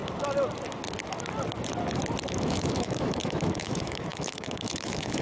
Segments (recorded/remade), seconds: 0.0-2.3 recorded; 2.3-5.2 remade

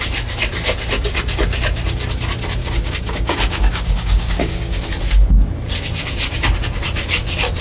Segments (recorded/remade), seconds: 0.0-2.6 recorded; 2.6-4.9 remade; 4.9-7.6 recorded